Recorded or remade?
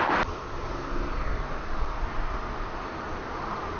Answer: recorded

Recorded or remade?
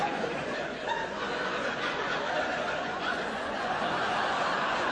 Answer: remade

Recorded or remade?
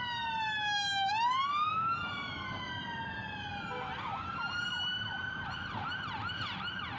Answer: recorded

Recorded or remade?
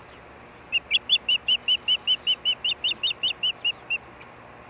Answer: recorded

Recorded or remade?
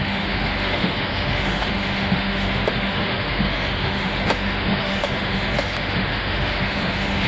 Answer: remade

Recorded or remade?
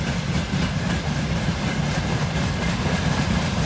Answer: recorded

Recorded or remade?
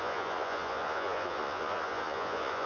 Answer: remade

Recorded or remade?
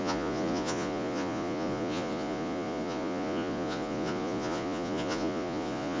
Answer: remade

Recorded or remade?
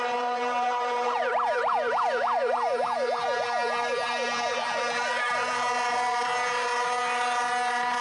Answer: remade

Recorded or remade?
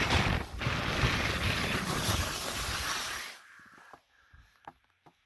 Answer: recorded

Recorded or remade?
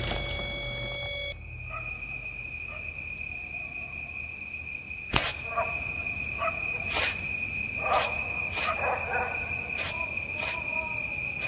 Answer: recorded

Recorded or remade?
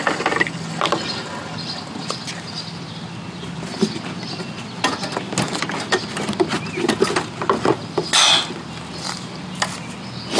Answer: recorded